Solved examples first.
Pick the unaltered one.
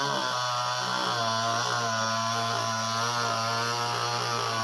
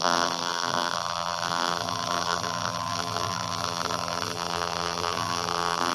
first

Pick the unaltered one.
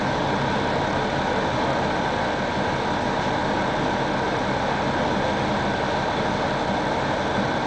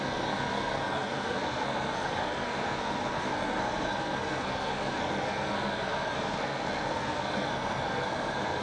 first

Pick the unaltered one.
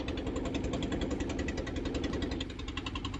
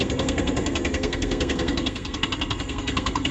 first